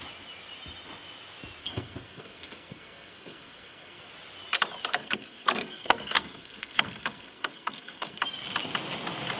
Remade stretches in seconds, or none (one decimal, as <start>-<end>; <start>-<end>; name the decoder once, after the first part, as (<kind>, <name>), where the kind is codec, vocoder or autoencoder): 1.6-4.1 (codec, SNAC); 4.9-8.2